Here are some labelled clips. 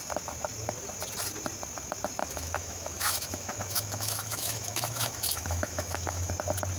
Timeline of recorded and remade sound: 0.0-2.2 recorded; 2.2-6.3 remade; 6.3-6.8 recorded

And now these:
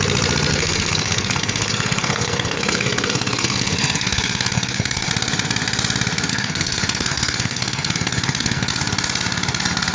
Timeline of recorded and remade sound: 0.0-0.5 recorded; 0.5-5.1 remade; 5.1-6.3 recorded; 6.3-8.7 remade; 8.7-9.9 recorded

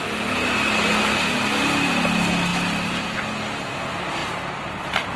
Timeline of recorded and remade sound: 0.0-5.2 recorded

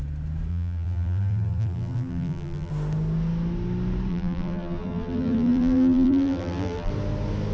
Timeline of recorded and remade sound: 0.0-0.5 recorded; 0.5-2.7 remade; 2.7-4.1 recorded; 4.1-6.9 remade; 6.9-7.5 recorded

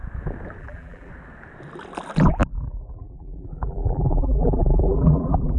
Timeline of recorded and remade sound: 0.0-0.6 recorded; 0.6-1.1 remade; 1.1-2.5 recorded; 2.5-5.6 remade

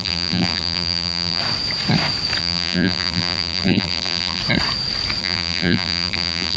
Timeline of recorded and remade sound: 0.0-1.4 remade; 1.4-2.4 recorded; 2.4-4.4 remade; 4.4-5.2 recorded; 5.2-6.6 remade

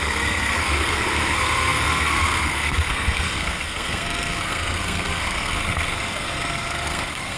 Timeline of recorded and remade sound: 0.0-7.4 remade

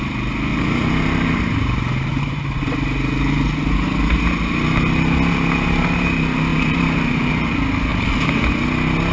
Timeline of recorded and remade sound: 0.0-0.5 recorded; 0.5-2.7 remade; 2.7-6.5 recorded; 6.5-7.3 remade; 7.3-9.1 recorded